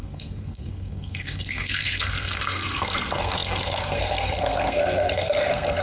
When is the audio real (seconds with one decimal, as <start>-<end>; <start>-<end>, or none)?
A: none